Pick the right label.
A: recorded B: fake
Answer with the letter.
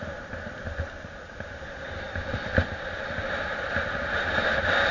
B